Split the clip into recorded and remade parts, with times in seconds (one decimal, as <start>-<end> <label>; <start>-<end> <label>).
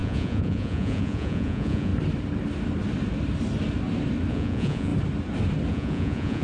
0.0-1.9 remade; 1.9-4.3 recorded; 4.3-4.9 remade; 4.9-5.7 recorded; 5.7-6.4 remade